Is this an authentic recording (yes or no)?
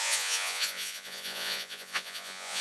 no